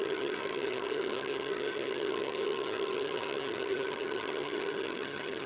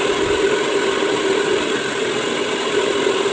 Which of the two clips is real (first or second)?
second